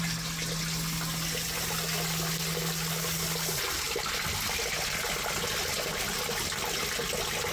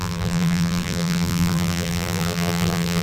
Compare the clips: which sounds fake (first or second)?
second